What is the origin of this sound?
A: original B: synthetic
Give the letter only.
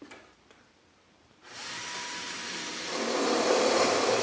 B